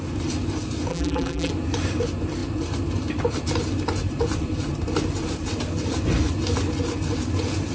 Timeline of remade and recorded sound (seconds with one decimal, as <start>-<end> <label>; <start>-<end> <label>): 0.0-0.9 recorded; 0.9-1.5 remade; 1.5-7.7 recorded